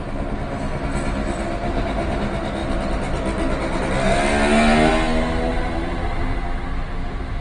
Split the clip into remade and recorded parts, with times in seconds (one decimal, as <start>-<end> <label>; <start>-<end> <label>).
0.0-1.6 recorded; 1.6-2.2 remade; 2.2-5.5 recorded; 5.5-6.4 remade; 6.4-7.4 recorded